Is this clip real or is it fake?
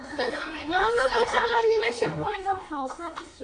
fake